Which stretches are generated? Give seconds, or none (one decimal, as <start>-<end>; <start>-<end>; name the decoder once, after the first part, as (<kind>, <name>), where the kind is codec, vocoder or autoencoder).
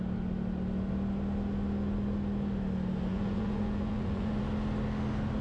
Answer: 3.1-4.4 (vocoder, Vocos)